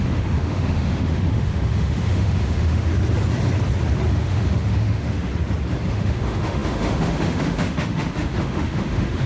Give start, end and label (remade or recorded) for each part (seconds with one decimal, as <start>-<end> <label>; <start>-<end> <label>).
0.0-2.9 remade; 2.9-4.1 recorded; 4.1-5.3 remade; 5.3-5.9 recorded; 5.9-9.3 remade